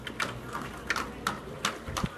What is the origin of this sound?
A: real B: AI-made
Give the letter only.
A